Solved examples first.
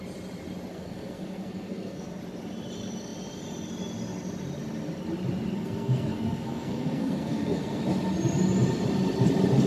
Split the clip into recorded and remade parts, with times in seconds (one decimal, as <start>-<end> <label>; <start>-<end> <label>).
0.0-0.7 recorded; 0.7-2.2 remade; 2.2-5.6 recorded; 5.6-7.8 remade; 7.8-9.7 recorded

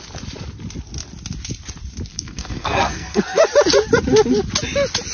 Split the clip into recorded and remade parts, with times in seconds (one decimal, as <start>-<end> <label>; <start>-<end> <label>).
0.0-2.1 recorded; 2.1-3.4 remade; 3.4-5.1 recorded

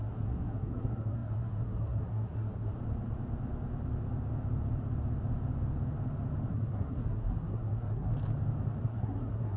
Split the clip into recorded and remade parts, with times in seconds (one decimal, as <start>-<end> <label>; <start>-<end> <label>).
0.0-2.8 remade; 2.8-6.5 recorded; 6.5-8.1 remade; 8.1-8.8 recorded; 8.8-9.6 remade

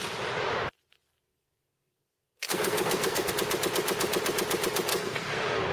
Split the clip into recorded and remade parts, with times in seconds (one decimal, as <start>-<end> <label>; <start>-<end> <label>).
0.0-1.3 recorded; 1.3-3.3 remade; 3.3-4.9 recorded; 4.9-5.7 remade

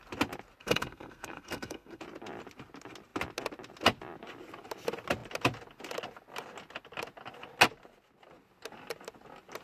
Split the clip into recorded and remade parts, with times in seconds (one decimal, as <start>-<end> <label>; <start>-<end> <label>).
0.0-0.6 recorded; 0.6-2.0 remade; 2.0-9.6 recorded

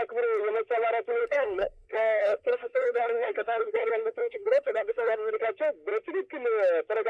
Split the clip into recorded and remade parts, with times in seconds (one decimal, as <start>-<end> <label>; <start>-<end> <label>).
0.0-1.2 recorded; 1.2-5.3 remade; 5.3-7.1 recorded

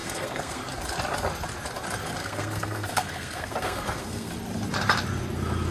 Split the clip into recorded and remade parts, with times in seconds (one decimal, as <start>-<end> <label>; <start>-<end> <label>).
0.0-0.6 remade; 0.6-2.2 recorded; 2.2-4.3 remade; 4.3-5.7 recorded